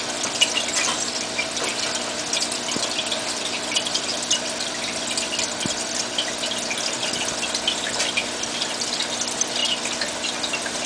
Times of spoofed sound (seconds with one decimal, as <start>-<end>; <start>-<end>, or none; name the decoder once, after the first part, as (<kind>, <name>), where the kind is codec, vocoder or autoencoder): 0.0-1.7 (vocoder, BigVGAN v2); 6.8-10.9